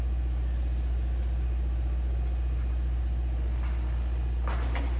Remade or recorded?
recorded